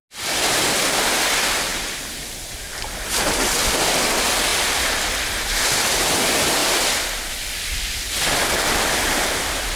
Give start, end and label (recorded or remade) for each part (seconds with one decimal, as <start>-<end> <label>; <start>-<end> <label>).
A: 0.0-1.7 recorded; 1.7-2.9 remade; 2.9-9.8 recorded